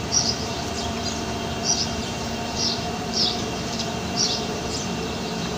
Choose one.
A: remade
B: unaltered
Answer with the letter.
A